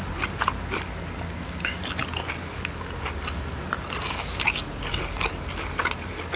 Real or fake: real